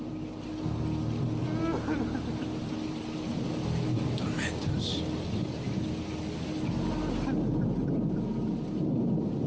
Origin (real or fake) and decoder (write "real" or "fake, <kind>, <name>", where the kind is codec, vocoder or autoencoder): real